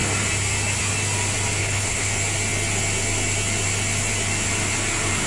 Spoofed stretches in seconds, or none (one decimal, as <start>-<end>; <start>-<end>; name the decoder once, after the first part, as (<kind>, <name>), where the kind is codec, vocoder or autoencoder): 1.6-2.1 (codec, HILCodec)